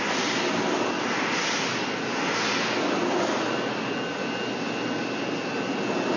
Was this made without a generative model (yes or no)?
yes